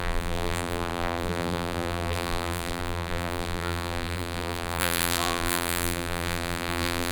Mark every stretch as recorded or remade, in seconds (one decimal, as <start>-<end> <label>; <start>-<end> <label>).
0.0-7.1 remade